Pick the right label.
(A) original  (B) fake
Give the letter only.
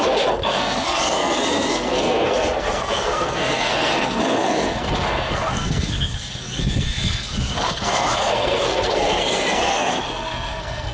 B